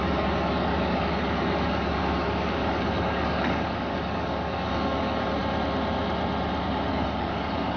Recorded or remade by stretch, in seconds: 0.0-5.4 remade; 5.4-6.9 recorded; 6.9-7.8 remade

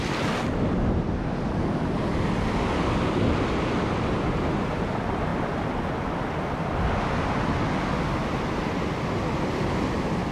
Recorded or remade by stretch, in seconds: 0.0-10.3 recorded

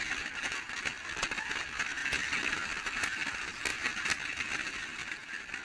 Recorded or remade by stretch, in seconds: 0.0-5.6 recorded

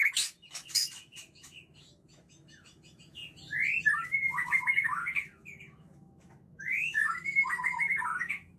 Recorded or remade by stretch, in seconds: 0.0-3.2 remade; 3.2-3.9 recorded; 3.9-8.6 remade

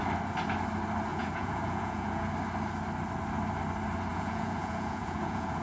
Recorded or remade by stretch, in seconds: 0.0-1.1 recorded; 1.1-2.3 remade; 2.3-4.1 recorded; 4.1-5.6 remade

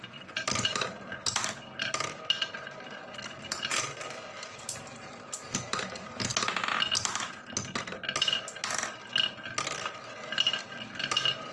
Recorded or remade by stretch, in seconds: 0.0-3.0 remade; 3.0-4.5 recorded; 4.5-6.3 remade; 6.3-11.0 recorded; 11.0-11.5 remade

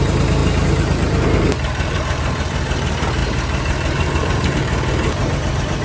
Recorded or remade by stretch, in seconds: 0.0-5.8 remade

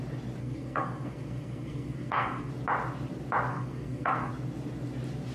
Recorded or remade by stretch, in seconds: 0.0-0.4 recorded; 0.4-2.5 remade; 2.5-3.5 recorded; 3.5-4.3 remade; 4.3-5.3 recorded